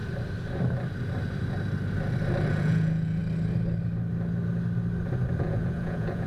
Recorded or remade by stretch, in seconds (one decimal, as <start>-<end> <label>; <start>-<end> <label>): 0.0-2.5 recorded; 2.5-3.2 remade; 3.2-5.4 recorded; 5.4-6.3 remade